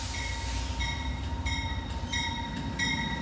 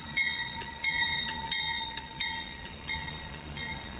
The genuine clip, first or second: first